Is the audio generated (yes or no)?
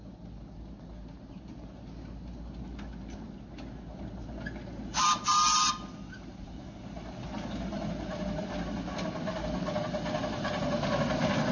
no